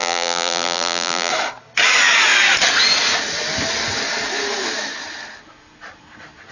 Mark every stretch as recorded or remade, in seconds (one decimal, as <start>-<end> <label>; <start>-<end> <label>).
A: 0.0-1.3 remade; 1.3-6.5 recorded